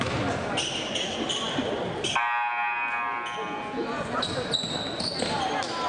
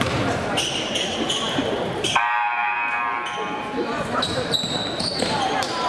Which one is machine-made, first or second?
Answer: second